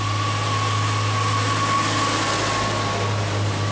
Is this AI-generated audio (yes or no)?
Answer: no